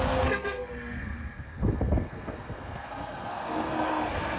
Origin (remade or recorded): remade